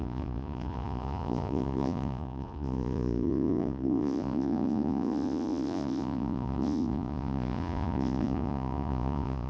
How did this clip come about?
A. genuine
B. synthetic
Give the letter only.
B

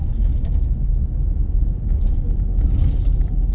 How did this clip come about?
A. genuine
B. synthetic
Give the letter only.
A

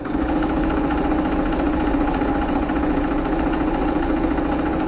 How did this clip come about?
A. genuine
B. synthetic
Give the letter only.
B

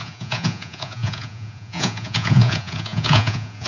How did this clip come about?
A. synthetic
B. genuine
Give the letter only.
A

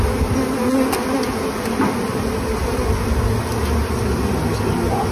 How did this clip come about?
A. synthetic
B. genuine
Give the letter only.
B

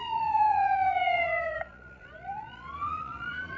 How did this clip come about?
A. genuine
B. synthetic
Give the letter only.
B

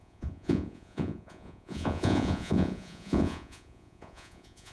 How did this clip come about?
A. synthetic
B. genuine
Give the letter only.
A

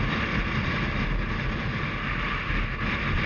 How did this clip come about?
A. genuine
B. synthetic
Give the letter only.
A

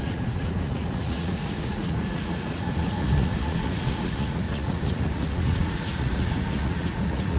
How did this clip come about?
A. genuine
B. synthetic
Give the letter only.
B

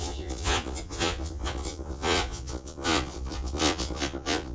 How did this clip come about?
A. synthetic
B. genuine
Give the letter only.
A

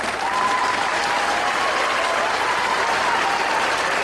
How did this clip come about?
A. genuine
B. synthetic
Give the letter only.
A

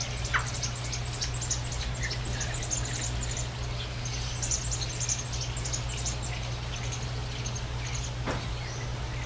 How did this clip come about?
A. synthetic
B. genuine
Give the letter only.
B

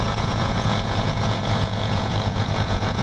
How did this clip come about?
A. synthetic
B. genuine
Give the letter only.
A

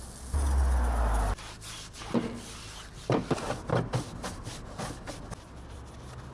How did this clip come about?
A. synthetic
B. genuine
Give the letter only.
B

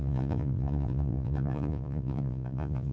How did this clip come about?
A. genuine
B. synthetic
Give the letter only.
B